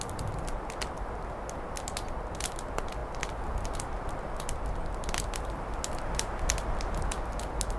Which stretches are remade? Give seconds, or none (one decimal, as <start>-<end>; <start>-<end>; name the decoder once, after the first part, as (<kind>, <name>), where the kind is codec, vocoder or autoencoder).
none